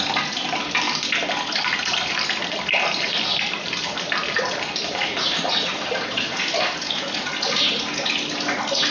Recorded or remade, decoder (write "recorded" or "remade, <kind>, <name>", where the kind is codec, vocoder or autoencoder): recorded